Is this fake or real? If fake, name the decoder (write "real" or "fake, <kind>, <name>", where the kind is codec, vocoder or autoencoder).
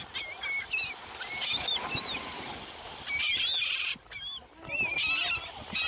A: real